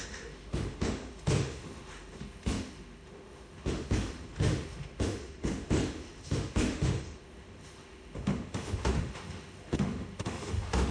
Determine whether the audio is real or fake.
fake